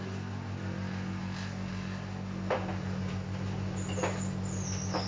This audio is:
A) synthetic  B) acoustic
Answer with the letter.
B